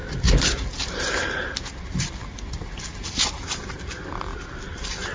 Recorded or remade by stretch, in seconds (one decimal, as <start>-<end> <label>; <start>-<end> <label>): 0.0-5.1 recorded

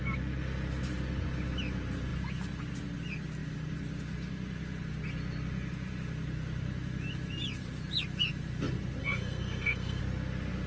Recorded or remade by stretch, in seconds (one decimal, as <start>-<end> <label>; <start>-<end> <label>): 0.0-9.0 recorded; 9.0-10.0 remade; 10.0-10.7 recorded

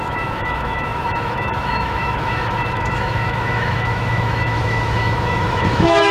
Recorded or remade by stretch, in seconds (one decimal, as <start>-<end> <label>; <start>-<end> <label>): 0.0-6.1 remade

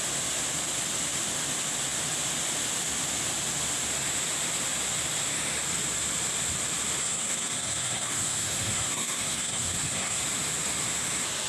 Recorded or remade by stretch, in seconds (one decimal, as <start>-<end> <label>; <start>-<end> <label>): 0.0-7.0 recorded; 7.0-10.2 remade; 10.2-11.5 recorded